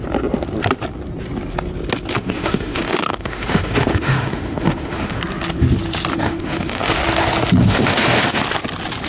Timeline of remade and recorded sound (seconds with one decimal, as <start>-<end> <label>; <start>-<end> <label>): 0.0-2.1 recorded; 2.1-5.2 remade; 5.2-6.1 recorded; 6.1-6.9 remade; 6.9-7.6 recorded; 7.6-8.4 remade; 8.4-9.1 recorded